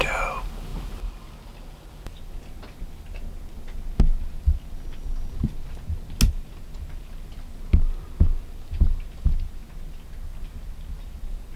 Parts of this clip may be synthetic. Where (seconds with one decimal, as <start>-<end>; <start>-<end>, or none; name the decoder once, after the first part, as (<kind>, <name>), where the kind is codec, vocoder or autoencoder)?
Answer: none